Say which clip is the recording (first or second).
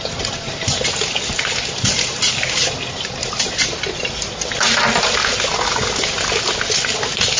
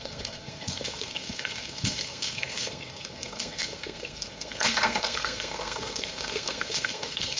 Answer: first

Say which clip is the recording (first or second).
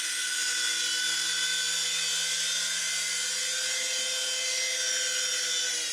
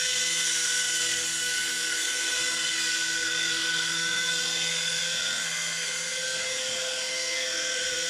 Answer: first